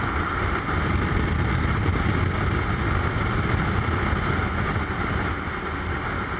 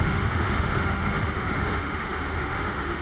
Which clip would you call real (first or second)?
first